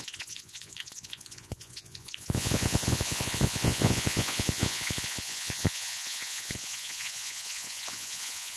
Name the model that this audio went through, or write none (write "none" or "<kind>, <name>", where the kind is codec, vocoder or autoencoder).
vocoder, Vocos